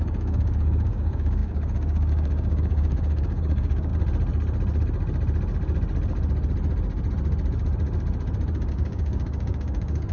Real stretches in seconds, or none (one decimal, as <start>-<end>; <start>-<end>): 3.9-8.7